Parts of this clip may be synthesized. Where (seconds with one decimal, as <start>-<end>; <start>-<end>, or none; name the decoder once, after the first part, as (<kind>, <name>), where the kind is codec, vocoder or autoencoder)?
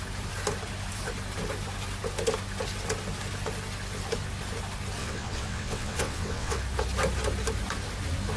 5.0-6.6 (vocoder, WaveNeXt)